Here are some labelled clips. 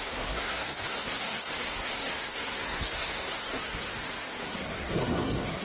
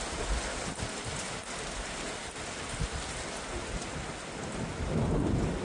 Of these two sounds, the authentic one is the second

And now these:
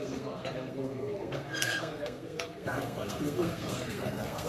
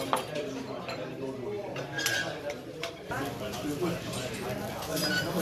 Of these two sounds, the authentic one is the second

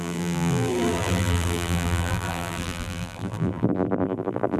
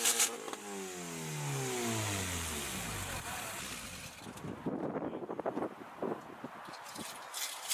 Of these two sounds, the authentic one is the second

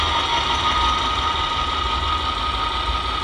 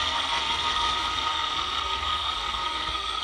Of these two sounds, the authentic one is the first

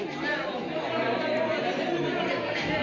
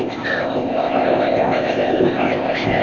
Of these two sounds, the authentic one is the first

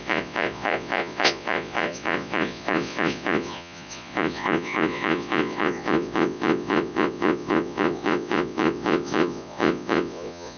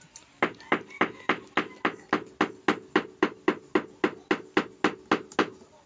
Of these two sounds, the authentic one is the second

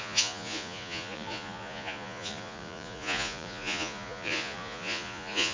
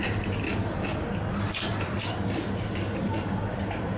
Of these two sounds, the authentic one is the second